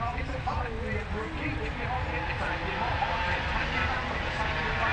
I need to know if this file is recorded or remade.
recorded